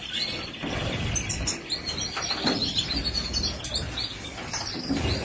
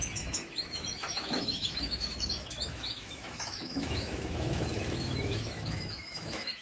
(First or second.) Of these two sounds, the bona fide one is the first